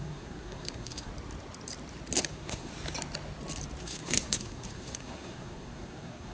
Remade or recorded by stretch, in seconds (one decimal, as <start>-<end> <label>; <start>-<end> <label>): 0.0-1.1 remade; 1.1-2.3 recorded; 2.3-2.7 remade; 2.7-3.8 recorded; 3.8-6.3 remade